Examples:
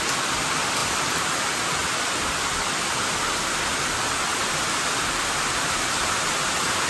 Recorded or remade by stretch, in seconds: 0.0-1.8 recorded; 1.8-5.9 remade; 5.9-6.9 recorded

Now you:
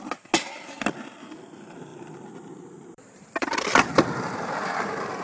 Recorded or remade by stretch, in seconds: 0.0-1.9 recorded; 1.9-5.2 remade

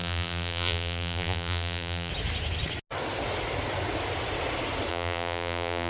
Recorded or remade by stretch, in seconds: 0.0-2.1 remade; 2.1-4.9 recorded; 4.9-5.9 remade

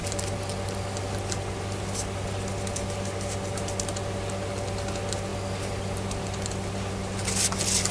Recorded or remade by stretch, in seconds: 0.0-7.9 recorded